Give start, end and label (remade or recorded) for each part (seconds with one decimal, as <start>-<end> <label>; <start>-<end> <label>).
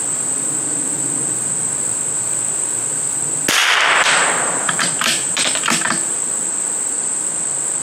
0.0-3.6 recorded; 3.6-5.9 remade; 5.9-7.8 recorded